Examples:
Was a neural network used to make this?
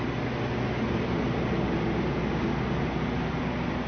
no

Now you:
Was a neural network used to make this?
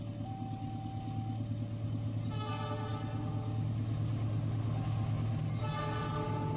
no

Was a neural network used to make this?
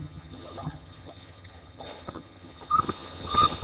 yes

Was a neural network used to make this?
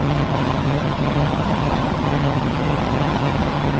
yes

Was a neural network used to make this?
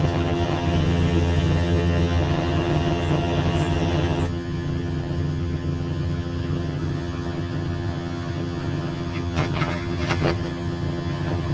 yes